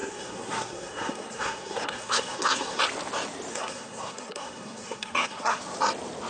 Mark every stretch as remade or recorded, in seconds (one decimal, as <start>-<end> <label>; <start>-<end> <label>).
0.0-2.8 remade; 2.8-3.5 recorded; 3.5-5.6 remade; 5.6-6.3 recorded